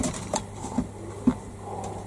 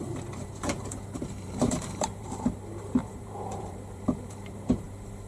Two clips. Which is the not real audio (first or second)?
second